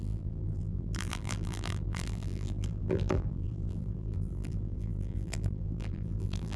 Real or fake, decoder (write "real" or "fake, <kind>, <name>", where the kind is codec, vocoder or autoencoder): fake, vocoder, BigVGAN v2